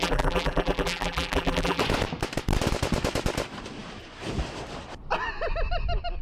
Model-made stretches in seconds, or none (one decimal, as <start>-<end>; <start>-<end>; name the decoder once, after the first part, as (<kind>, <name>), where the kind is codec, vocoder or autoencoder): 0.0-1.8 (vocoder, BigVGAN v2)